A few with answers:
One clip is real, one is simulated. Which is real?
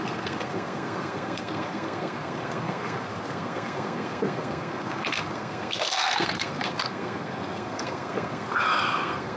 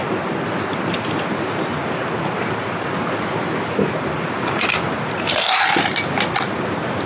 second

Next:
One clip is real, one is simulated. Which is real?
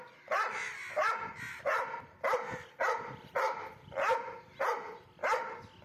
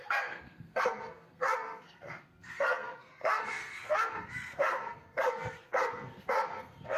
first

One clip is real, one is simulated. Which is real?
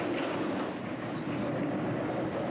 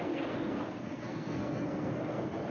first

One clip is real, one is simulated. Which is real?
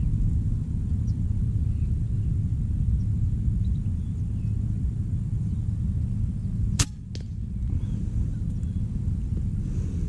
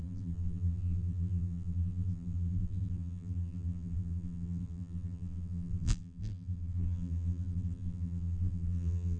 first